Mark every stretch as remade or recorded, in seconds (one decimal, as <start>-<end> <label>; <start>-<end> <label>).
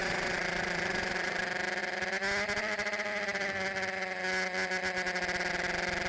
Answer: 0.0-1.4 remade; 1.4-6.1 recorded